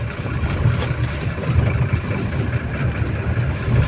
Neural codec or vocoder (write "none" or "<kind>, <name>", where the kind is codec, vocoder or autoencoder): none